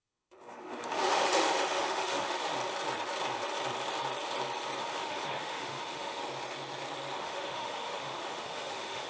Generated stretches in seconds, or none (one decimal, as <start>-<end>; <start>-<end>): 0.0-2.5; 4.8-6.2; 7.2-9.1